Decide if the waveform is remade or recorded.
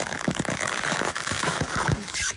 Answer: remade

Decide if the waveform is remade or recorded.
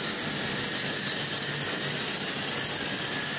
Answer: recorded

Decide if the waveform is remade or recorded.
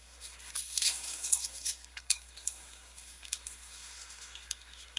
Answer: remade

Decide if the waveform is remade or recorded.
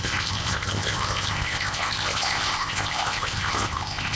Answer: remade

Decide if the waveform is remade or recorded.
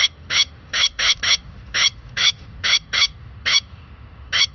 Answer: remade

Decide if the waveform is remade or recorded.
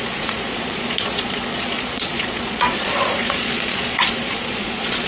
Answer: remade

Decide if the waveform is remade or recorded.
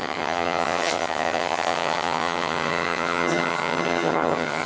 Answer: remade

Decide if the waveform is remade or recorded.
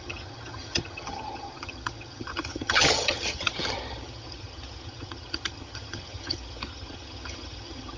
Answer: remade